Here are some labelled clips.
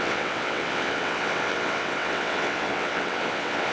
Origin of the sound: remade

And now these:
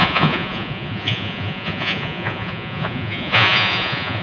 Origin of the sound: remade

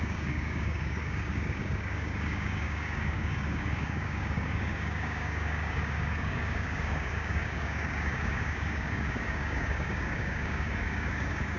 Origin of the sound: remade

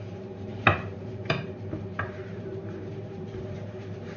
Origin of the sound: remade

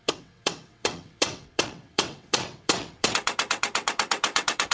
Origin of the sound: remade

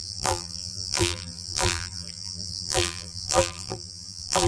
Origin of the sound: remade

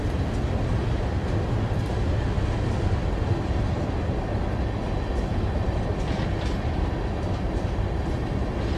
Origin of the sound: recorded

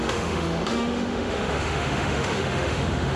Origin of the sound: remade